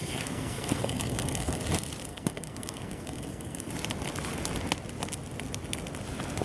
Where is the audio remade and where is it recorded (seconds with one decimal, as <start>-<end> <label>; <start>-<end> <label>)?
0.0-1.6 remade; 1.6-2.1 recorded; 2.1-3.7 remade; 3.7-6.4 recorded